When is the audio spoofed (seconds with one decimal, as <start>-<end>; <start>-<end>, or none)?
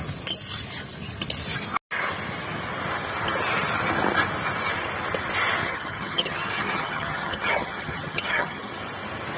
5.6-8.8